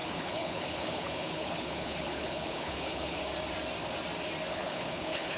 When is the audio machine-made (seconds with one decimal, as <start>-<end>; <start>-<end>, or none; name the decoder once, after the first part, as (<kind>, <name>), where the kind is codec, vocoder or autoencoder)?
0.0-3.2 (codec, HILCodec); 4.5-5.4